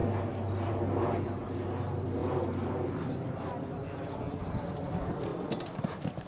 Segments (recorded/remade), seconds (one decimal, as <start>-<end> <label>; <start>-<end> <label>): 0.0-6.3 recorded